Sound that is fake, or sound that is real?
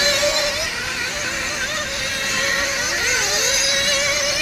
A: real